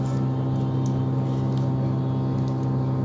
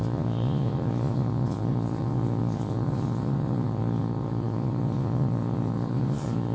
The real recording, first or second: first